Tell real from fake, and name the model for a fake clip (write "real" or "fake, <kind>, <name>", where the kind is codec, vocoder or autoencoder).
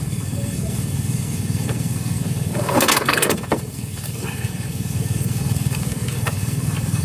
fake, codec, SNAC